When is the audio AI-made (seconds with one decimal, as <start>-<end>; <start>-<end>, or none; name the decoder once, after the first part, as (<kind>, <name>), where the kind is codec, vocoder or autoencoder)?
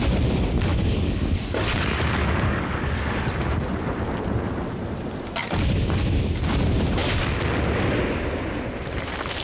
0.7-3.3 (codec, DAC); 5.4-6.0